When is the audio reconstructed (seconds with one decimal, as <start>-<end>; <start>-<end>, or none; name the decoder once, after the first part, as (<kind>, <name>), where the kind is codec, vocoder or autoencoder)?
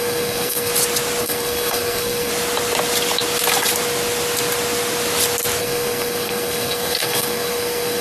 0.0-0.7 (codec, SNAC); 1.2-2.3; 5.6-8.0